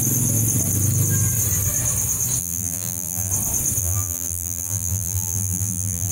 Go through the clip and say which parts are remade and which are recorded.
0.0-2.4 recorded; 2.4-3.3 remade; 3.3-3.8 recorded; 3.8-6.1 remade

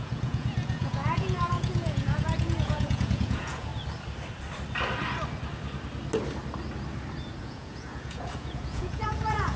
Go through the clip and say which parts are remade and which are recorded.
0.0-3.7 remade; 3.7-7.4 recorded; 7.4-9.6 remade

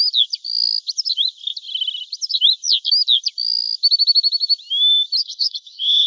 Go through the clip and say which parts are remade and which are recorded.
0.0-5.2 recorded; 5.2-6.1 remade

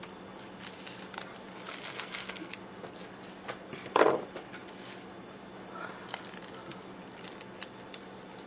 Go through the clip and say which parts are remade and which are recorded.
0.0-1.9 recorded; 1.9-2.5 remade; 2.5-8.5 recorded

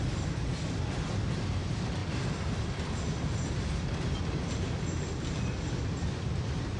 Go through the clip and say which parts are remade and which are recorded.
0.0-6.8 recorded

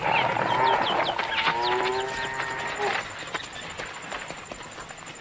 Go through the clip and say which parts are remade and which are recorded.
0.0-5.2 recorded

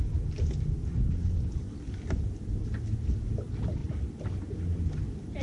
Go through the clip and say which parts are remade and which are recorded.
0.0-5.4 recorded